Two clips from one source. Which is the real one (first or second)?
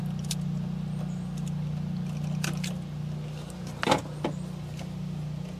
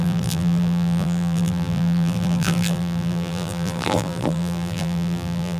first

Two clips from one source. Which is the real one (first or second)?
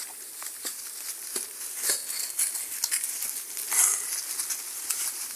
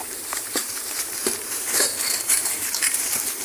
first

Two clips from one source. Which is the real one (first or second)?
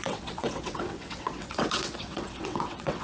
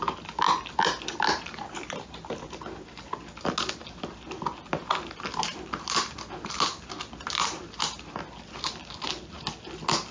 second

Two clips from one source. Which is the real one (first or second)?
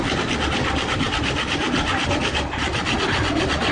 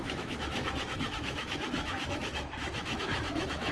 first